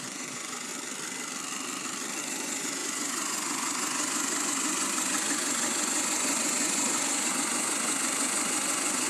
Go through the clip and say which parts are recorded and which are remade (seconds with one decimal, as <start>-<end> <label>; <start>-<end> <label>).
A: 0.0-0.7 remade; 0.7-2.2 recorded; 2.2-9.1 remade